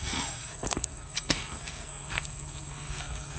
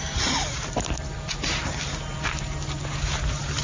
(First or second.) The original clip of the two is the second